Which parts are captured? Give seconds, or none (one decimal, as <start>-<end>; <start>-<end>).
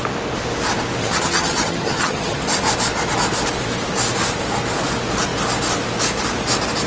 0.0-1.0; 2.4-6.9